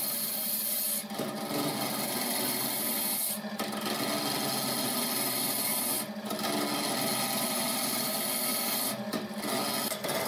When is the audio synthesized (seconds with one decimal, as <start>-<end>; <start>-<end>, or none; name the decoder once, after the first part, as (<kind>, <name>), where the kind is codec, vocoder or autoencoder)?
none